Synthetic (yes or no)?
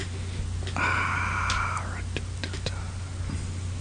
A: no